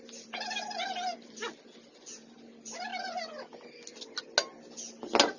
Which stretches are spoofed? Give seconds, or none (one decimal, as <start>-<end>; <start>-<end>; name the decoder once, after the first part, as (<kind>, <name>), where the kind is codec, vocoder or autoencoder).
none